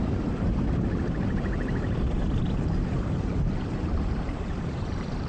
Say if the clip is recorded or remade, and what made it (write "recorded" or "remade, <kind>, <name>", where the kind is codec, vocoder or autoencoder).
remade, vocoder, BigVGAN v2